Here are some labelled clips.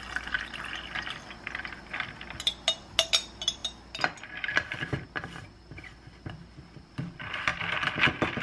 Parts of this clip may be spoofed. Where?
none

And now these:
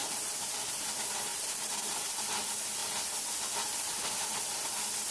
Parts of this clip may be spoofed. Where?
1.3-2.0

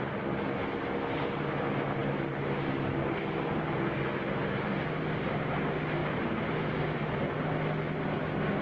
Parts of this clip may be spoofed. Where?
none

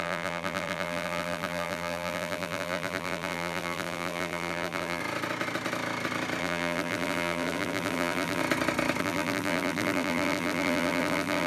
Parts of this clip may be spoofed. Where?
0.0-5.0; 6.4-8.4; 9.0-11.5

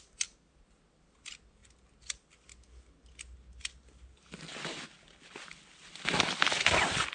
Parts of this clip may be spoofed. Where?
none

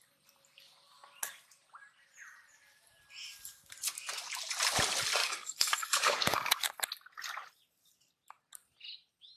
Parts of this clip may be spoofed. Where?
5.2-6.7

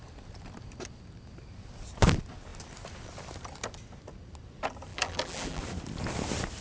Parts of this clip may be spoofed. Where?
4.9-5.6